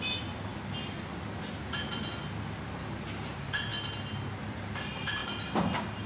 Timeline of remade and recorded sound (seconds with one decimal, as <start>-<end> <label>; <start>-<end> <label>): 0.0-0.5 remade; 0.5-3.3 recorded; 3.3-3.7 remade; 3.7-4.5 recorded; 4.5-5.2 remade; 5.2-6.1 recorded

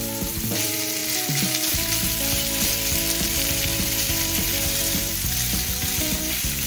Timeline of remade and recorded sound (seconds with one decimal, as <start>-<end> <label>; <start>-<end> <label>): 0.0-6.7 remade

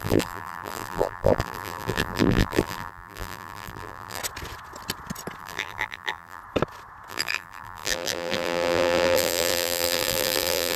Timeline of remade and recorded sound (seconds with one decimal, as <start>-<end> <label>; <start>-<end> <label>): 0.0-4.2 remade; 4.2-5.4 recorded; 5.4-6.4 remade; 6.4-7.1 recorded; 7.1-10.8 remade

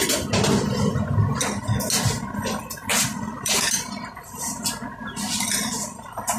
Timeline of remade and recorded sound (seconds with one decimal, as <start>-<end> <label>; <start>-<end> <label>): 0.0-2.9 recorded; 2.9-4.6 remade; 4.6-6.4 recorded